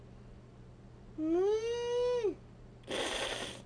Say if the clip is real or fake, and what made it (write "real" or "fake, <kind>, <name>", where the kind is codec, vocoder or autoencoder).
real